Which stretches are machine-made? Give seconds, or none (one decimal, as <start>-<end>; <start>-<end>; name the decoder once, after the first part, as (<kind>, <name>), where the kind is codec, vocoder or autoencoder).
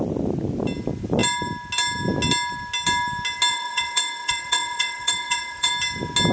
3.5-5.7 (vocoder, WaveNeXt)